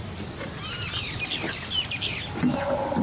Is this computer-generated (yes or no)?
no